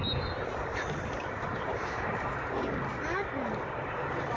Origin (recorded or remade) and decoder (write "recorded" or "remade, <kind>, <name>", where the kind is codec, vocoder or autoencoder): recorded